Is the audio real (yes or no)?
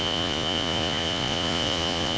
no